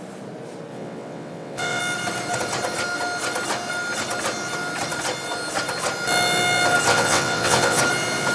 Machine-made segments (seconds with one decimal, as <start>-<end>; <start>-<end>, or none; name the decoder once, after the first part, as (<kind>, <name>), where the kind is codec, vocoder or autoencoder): 0.7-1.8 (vocoder, WaveNeXt); 6.9-7.8